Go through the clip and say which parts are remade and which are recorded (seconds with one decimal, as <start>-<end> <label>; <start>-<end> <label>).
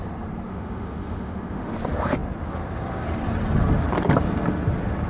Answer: 0.0-0.5 recorded; 0.5-1.7 remade; 1.7-5.1 recorded